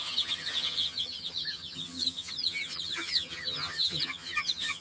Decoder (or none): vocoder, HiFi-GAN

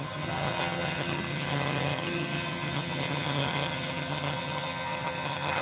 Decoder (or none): vocoder, HiFi-GAN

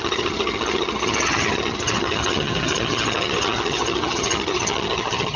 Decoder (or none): vocoder, HiFi-GAN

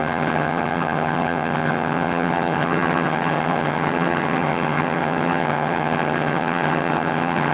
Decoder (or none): vocoder, HiFi-GAN